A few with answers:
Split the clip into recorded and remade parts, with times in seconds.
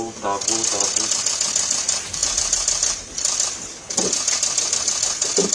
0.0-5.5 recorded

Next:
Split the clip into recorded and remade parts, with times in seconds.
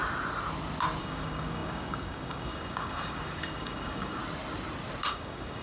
0.0-1.0 recorded; 1.0-4.2 remade; 4.2-5.1 recorded; 5.1-5.6 remade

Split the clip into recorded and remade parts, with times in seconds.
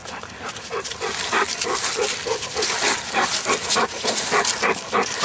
0.0-3.6 recorded; 3.6-4.2 remade; 4.2-5.2 recorded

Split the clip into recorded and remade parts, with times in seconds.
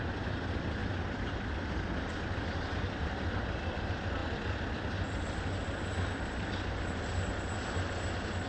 0.0-8.5 recorded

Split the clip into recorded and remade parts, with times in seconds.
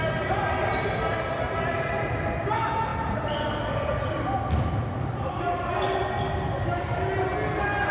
0.0-7.9 recorded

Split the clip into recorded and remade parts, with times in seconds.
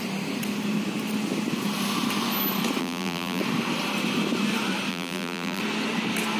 0.0-2.8 recorded; 2.8-3.4 remade; 3.4-4.9 recorded; 4.9-5.6 remade; 5.6-6.4 recorded